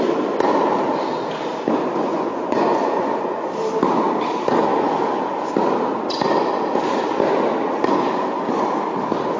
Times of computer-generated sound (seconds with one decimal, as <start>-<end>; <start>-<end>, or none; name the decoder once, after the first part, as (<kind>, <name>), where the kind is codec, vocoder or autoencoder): 2.1-3.5 (vocoder, Vocos)